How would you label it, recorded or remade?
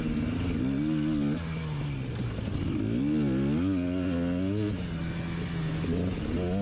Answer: recorded